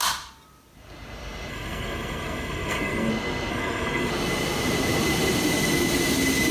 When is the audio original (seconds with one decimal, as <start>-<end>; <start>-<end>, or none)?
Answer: 0.0-1.5; 3.1-3.5; 4.1-6.5